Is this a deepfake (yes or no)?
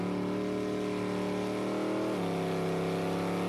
no